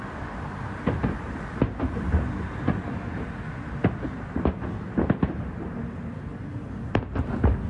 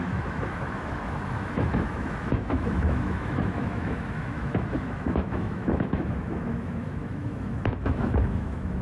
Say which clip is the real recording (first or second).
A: first